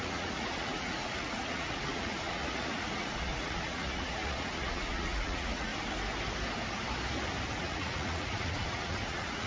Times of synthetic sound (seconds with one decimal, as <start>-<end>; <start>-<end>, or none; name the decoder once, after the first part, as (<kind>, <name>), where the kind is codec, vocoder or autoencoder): 0.0-5.7 (vocoder, Vocos); 7.6-9.5